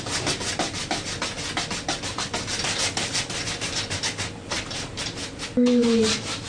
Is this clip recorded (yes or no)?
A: yes